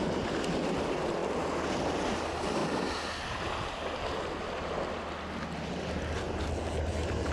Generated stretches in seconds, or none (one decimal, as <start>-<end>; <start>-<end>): none